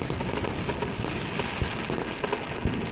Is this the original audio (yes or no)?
yes